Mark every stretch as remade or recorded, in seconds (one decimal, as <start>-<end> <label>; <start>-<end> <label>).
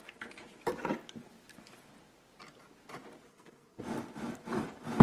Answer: 0.0-3.3 recorded; 3.3-3.8 remade; 3.8-5.0 recorded